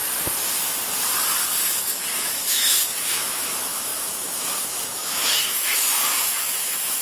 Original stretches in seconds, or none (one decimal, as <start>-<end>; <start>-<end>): 0.0-1.8